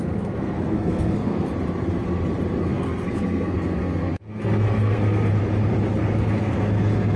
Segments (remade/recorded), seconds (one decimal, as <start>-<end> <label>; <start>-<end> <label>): 0.0-1.5 remade; 1.5-2.6 recorded; 2.6-5.3 remade; 5.3-6.2 recorded; 6.2-7.2 remade